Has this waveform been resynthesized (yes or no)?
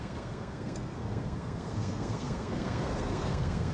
yes